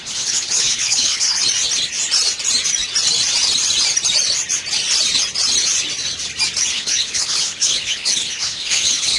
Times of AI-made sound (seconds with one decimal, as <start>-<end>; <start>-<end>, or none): 0.0-1.4; 6.7-9.2